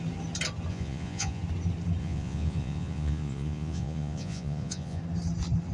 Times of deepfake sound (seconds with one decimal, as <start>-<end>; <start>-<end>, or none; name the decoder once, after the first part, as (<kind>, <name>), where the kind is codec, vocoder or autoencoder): 0.7-1.4 (vocoder, Vocos); 2.0-5.0